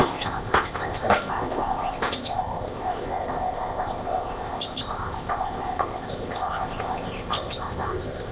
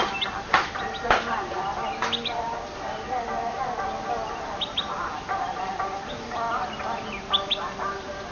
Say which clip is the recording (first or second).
second